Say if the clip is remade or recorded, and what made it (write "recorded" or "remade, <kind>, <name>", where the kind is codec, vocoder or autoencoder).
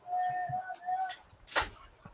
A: recorded